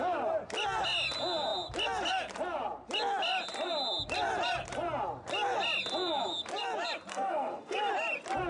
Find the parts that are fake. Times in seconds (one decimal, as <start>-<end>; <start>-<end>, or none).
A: 7.1-7.9